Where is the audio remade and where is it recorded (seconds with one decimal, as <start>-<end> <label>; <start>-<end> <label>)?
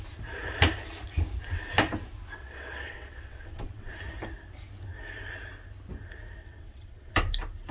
0.0-2.4 recorded; 2.4-3.9 remade; 3.9-6.4 recorded; 6.4-7.1 remade; 7.1-7.7 recorded